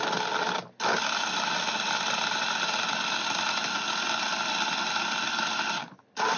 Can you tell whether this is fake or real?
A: real